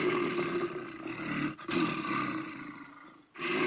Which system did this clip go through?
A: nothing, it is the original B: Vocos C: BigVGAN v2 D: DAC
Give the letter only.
A